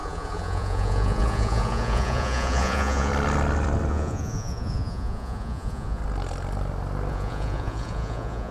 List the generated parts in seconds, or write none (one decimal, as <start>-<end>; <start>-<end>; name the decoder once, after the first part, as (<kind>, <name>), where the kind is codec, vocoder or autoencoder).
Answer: 0.0-3.1 (vocoder, Vocos); 3.9-6.0; 7.1-8.5